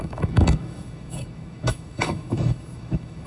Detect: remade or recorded remade